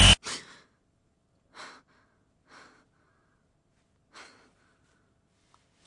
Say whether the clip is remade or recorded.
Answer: recorded